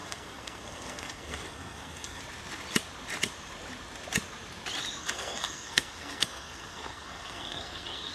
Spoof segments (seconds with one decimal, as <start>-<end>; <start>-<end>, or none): 0.0-2.2; 5.0-8.1